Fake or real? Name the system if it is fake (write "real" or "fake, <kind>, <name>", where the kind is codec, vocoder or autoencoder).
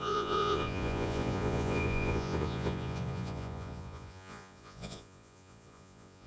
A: fake, vocoder, Vocos